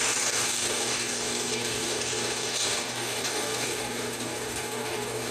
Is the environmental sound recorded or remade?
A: remade